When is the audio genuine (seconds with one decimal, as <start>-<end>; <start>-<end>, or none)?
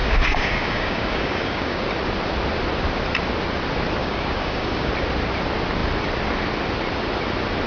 1.8-4.0; 4.9-7.7